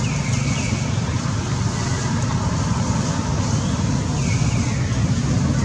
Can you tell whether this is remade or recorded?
recorded